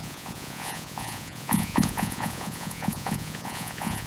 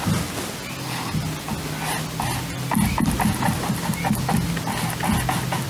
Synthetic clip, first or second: first